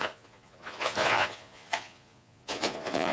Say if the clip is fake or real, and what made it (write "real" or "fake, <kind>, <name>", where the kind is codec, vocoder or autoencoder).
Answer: fake, vocoder, Vocos